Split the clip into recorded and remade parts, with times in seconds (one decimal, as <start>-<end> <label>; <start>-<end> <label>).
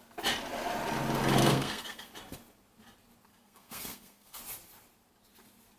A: 0.0-1.4 recorded; 1.4-2.1 remade; 2.1-3.3 recorded; 3.3-4.4 remade; 4.4-5.8 recorded